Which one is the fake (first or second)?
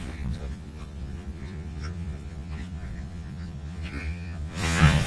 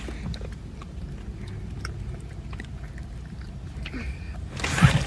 first